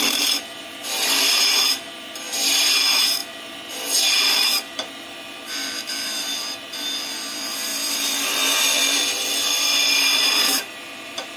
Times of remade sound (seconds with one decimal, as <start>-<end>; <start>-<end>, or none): 0.0-11.4